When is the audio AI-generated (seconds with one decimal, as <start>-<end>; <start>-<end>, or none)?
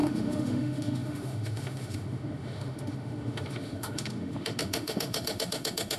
0.0-6.0